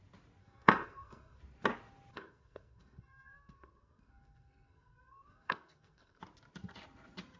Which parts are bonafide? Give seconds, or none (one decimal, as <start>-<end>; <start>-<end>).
0.0-0.4; 1.4-2.1; 6.2-7.4